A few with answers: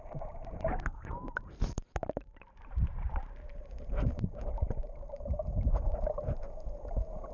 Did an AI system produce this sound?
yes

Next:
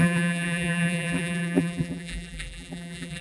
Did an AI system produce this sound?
yes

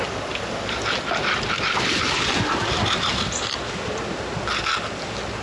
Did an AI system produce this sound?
no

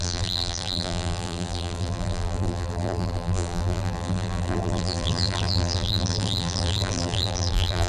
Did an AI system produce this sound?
yes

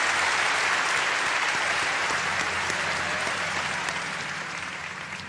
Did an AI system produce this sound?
yes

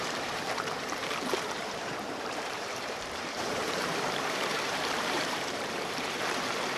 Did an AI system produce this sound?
yes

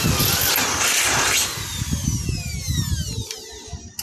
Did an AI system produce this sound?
no